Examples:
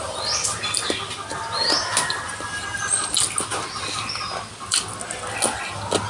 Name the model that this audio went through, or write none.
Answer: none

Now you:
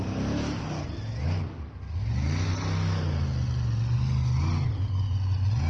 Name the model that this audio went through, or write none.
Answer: none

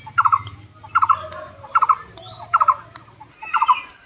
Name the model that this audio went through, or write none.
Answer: none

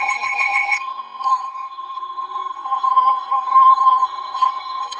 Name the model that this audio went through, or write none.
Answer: codec, SNAC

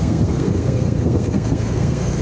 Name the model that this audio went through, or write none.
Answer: codec, SNAC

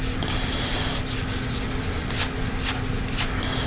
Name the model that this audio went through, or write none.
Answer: none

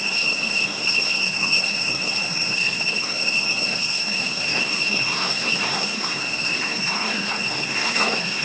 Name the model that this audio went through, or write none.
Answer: codec, SNAC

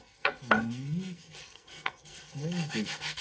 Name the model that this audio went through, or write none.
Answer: codec, SNAC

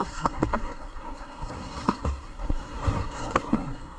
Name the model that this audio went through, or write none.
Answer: codec, SNAC